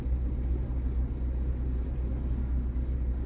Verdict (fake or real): real